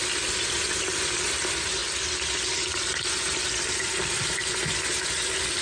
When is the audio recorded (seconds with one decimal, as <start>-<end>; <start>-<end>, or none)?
0.0-5.6